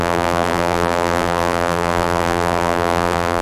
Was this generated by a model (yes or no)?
yes